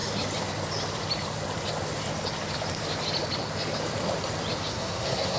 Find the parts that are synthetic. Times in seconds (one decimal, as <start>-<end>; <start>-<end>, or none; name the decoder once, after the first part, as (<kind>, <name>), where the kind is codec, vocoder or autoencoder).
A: 4.7-5.4 (codec, SNAC)